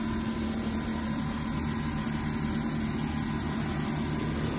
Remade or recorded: recorded